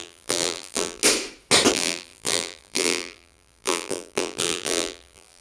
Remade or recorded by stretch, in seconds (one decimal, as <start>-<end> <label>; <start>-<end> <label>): 0.0-1.0 remade; 1.0-1.7 recorded; 1.7-5.4 remade